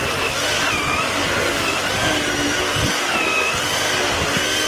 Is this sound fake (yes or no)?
no